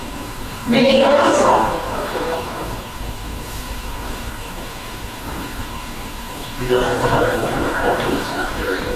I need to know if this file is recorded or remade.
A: remade